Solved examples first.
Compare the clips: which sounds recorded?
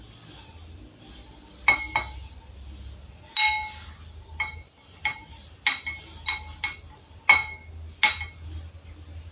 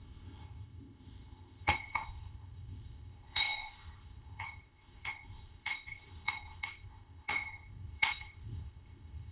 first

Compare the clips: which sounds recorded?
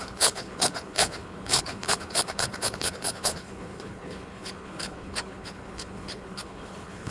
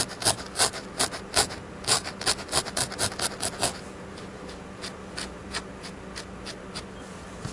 second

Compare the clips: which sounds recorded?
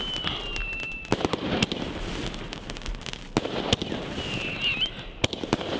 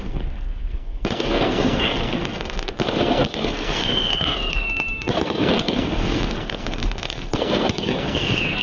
first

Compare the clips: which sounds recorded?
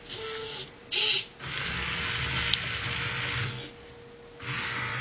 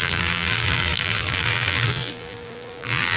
first